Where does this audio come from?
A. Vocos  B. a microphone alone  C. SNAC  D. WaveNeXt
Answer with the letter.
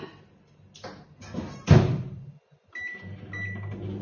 B